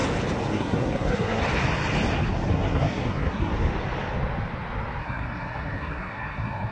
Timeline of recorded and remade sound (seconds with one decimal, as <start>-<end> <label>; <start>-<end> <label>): 0.0-0.5 recorded; 0.5-1.4 remade; 1.4-2.5 recorded; 2.5-3.5 remade; 3.5-5.0 recorded; 5.0-6.7 remade